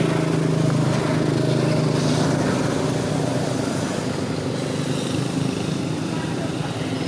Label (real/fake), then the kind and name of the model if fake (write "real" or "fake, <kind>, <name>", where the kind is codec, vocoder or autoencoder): real